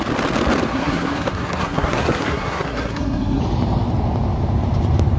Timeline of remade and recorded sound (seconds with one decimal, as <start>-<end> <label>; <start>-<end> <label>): 0.0-0.7 recorded; 0.7-3.4 remade; 3.4-5.2 recorded